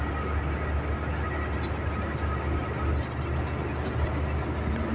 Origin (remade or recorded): recorded